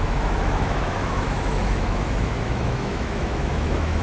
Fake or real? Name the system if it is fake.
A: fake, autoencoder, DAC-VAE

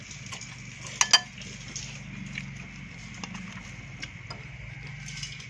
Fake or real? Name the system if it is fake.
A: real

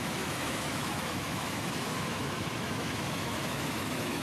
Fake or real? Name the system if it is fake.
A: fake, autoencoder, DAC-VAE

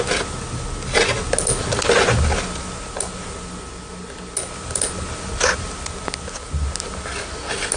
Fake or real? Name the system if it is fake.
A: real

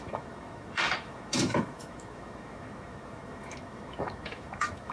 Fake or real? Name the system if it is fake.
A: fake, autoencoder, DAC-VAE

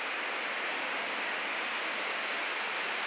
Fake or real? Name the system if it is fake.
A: real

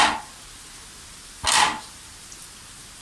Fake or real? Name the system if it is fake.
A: real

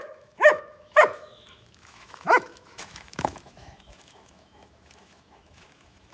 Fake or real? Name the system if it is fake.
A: fake, autoencoder, DAC-VAE